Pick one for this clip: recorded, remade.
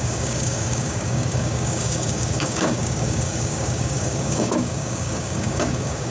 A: remade